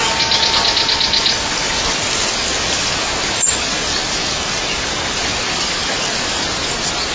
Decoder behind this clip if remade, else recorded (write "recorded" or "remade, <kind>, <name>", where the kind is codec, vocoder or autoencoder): recorded